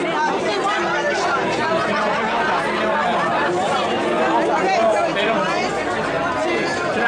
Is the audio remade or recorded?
recorded